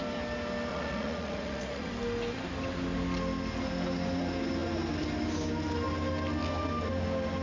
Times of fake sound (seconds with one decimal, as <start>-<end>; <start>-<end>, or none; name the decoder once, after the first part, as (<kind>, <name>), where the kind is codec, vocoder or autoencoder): 0.7-1.9 (vocoder, Vocos)